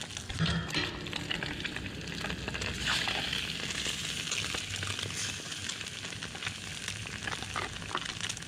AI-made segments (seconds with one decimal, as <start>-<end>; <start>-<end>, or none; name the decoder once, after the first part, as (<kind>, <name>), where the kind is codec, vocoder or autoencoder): none